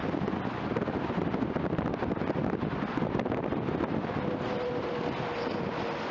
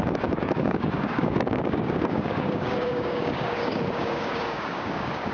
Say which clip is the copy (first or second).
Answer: second